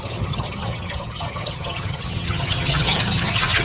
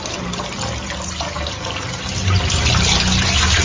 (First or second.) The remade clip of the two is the first